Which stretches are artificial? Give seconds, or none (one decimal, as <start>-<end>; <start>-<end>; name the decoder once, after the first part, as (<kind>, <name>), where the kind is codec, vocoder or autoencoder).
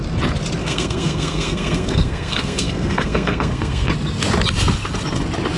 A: 0.6-3.9 (codec, SNAC)